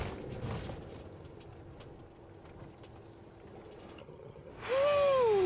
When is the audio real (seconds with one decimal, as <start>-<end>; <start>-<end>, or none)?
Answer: 0.0-4.0; 4.5-5.5